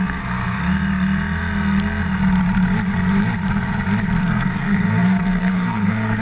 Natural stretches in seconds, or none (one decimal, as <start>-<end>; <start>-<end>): 0.6-4.2